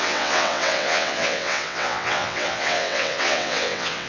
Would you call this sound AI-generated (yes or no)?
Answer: yes